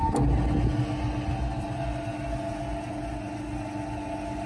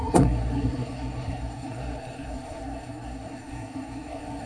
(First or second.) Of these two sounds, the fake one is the second